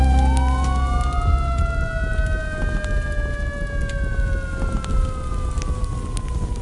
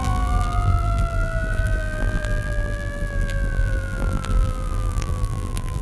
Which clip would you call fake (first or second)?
second